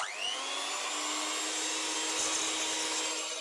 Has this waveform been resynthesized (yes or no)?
no